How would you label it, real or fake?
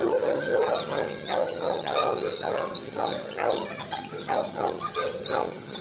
fake